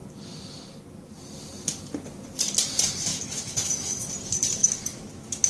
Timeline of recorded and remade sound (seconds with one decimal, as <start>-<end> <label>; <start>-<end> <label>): 0.0-3.1 recorded; 3.1-4.1 remade; 4.1-4.6 recorded; 4.6-5.5 remade